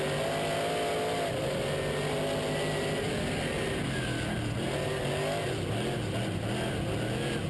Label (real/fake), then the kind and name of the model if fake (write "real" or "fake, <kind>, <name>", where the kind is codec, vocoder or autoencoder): real